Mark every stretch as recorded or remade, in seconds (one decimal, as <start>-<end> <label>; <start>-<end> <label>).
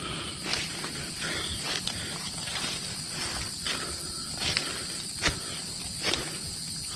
0.0-0.5 recorded; 0.5-2.8 remade; 2.8-7.0 recorded